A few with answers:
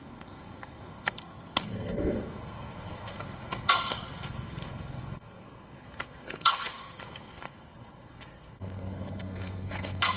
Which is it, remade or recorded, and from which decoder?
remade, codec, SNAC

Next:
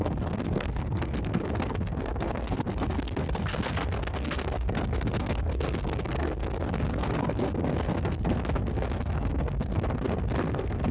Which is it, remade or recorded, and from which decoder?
remade, codec, SNAC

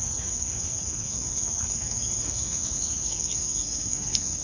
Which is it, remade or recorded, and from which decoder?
remade, codec, SNAC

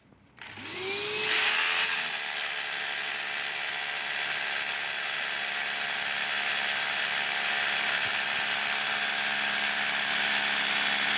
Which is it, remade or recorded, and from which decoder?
recorded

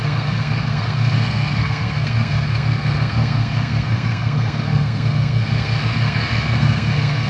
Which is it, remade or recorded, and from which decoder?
remade, codec, SNAC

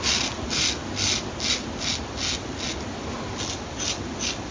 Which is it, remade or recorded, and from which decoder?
recorded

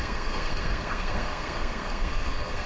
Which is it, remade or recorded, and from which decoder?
remade, codec, SNAC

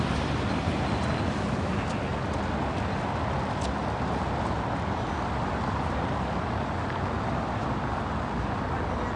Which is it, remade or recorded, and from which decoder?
recorded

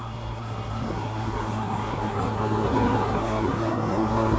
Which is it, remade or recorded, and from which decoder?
remade, codec, SNAC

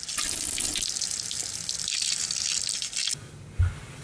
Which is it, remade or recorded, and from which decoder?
recorded